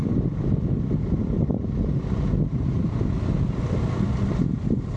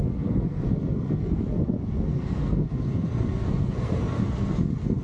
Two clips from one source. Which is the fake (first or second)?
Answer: second